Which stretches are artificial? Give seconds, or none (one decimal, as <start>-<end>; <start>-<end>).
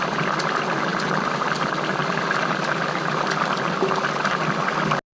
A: none